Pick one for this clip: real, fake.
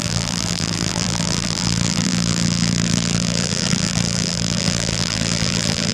fake